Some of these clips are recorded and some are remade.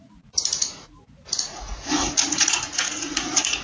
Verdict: remade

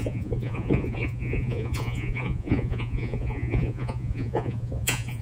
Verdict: remade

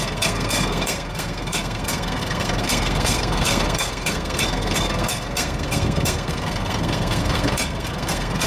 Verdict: remade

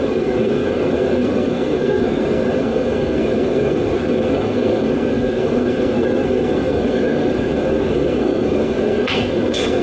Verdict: remade